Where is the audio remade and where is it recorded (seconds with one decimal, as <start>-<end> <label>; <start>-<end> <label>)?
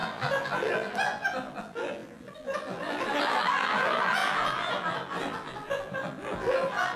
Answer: 0.0-7.0 remade